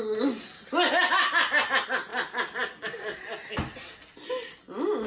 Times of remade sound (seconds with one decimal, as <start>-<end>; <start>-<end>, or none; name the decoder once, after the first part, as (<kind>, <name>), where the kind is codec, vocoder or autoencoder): 2.1-3.5 (vocoder, BigVGAN v2)